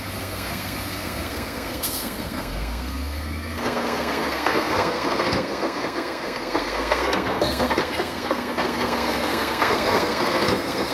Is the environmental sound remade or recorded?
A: remade